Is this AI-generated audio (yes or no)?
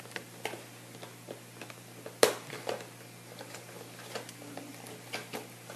no